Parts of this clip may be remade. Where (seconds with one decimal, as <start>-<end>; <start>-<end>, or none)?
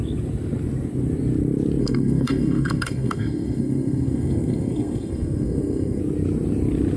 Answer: 1.8-6.0